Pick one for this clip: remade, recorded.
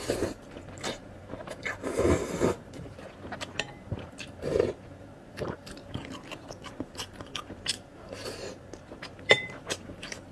remade